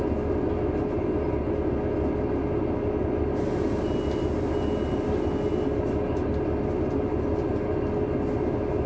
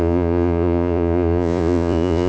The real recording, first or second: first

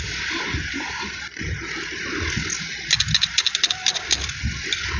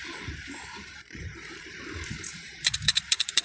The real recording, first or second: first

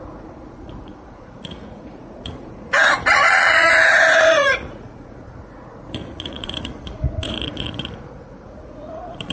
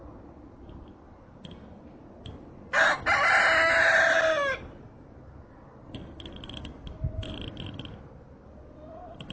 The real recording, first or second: second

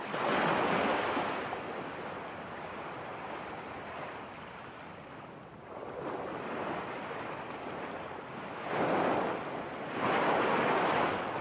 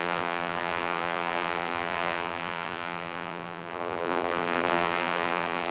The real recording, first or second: first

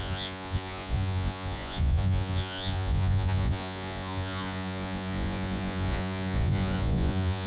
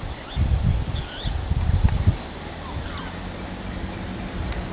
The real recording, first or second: second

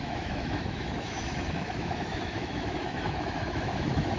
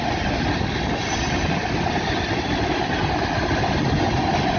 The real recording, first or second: second